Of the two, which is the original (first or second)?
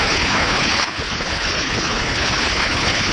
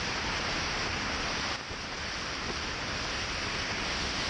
second